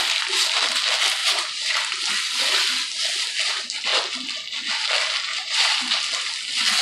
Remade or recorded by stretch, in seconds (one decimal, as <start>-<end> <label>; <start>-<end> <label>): 0.0-1.2 recorded; 1.2-2.1 remade; 2.1-5.3 recorded; 5.3-6.0 remade; 6.0-6.8 recorded